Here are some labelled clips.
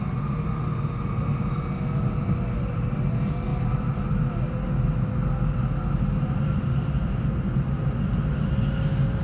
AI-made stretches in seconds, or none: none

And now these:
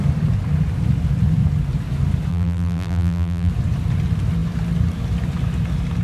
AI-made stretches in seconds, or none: 2.3-3.5 (vocoder, BigVGAN v2)

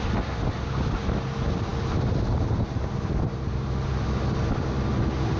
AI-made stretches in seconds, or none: none

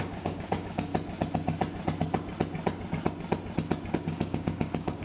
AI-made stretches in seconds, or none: 0.0-0.9 (codec, DAC); 3.9-5.0

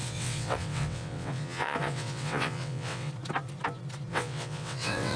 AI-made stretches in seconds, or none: 0.0-3.1 (vocoder, WaveNeXt); 4.1-5.2

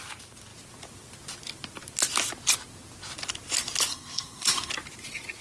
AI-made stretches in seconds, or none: 3.9-4.7 (codec, SNAC)